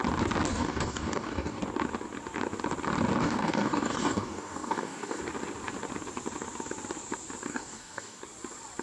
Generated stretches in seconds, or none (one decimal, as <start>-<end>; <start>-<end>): 0.5-1.6; 3.2-5.2; 7.5-8.2